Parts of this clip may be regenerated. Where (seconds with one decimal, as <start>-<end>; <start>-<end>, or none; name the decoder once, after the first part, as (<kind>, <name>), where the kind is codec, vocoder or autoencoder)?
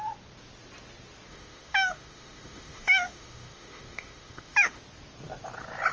1.3-4.8 (autoencoder, DAC-VAE)